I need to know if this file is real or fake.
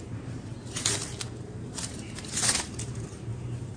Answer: fake